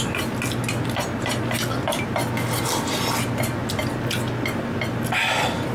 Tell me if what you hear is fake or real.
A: real